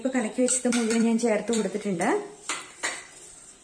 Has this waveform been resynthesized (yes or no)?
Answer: yes